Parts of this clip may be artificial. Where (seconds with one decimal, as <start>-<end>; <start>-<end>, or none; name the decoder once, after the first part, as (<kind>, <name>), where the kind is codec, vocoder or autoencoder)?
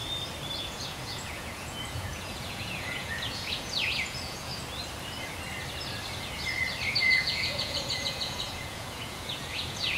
0.6-4.5 (vocoder, Vocos); 7.0-10.0